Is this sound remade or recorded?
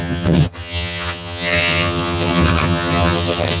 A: remade